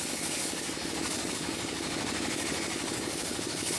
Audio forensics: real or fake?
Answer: fake